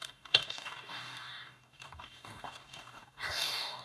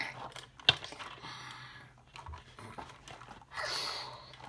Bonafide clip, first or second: second